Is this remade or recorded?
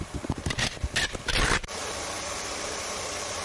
remade